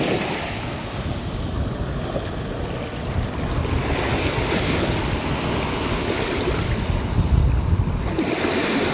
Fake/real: real